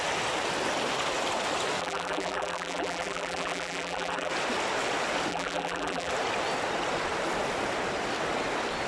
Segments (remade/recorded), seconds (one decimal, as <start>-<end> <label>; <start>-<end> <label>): 0.0-1.8 recorded; 1.8-4.3 remade; 4.3-5.3 recorded; 5.3-6.1 remade; 6.1-8.9 recorded

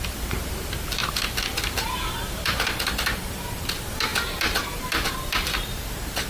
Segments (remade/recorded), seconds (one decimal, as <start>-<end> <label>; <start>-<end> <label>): 0.0-6.3 remade

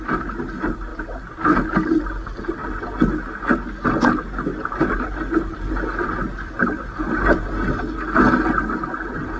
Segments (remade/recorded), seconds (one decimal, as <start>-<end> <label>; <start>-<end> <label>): 0.0-9.4 recorded

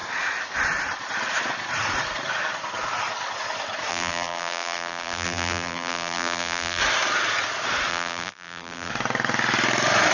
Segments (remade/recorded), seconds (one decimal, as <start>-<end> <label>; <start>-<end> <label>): 0.0-3.9 recorded; 3.9-6.8 remade; 6.8-7.9 recorded; 7.9-8.9 remade; 8.9-10.1 recorded

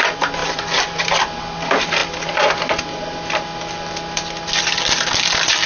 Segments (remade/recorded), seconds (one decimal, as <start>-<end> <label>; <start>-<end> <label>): 0.0-0.4 recorded; 0.4-1.1 remade; 1.1-5.7 recorded

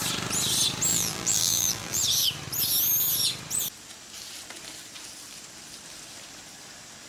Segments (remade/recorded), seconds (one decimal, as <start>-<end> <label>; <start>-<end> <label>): 0.0-0.9 recorded; 0.9-2.0 remade; 2.0-7.1 recorded

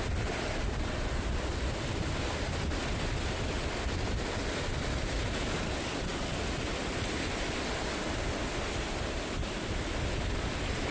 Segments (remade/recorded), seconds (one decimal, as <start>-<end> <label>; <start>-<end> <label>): 0.0-10.9 recorded

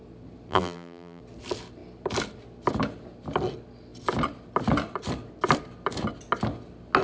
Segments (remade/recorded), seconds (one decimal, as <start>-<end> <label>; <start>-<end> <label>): 0.0-0.5 recorded; 0.5-1.2 remade; 1.2-7.0 recorded